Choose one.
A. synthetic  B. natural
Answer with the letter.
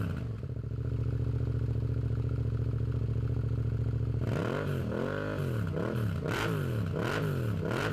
B